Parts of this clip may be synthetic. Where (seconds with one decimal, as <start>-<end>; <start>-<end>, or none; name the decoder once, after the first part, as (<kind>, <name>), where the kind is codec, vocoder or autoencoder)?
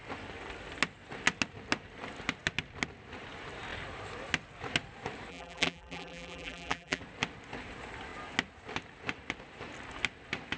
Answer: 5.3-7.0 (vocoder, BigVGAN v2)